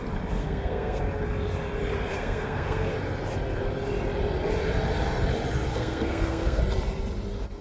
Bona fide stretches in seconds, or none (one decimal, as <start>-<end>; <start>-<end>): 0.0-0.4; 1.0-2.1; 2.9-5.7; 6.6-7.6